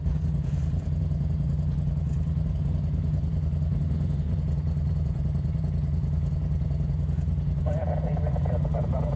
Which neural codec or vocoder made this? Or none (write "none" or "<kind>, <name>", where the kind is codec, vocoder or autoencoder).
vocoder, Vocos